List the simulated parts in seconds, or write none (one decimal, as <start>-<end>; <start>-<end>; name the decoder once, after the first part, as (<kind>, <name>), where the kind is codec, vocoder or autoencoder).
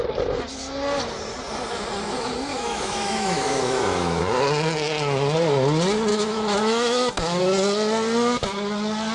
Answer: 2.5-4.2 (autoencoder, DAC-VAE); 6.1-7.4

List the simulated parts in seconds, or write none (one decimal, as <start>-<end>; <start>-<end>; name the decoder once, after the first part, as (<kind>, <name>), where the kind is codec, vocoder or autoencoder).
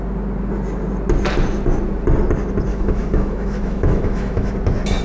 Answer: 2.7-4.5 (autoencoder, DAC-VAE)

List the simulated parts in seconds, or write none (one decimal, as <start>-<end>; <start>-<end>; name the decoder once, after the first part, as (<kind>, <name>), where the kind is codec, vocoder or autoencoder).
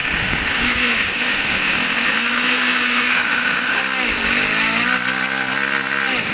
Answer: 0.0-3.8 (autoencoder, DAC-VAE)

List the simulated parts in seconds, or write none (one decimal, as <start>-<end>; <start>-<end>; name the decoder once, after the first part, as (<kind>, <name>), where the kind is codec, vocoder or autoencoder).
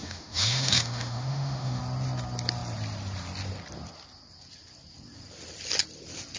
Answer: 0.0-1.8 (autoencoder, DAC-VAE)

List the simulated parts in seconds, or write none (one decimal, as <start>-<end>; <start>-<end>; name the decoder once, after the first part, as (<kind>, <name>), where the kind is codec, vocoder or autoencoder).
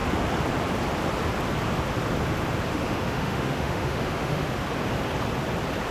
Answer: 2.7-4.5 (autoencoder, DAC-VAE)